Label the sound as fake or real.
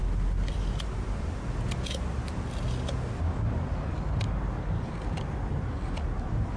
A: real